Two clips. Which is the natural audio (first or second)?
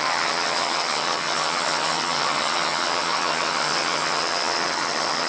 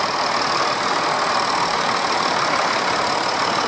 second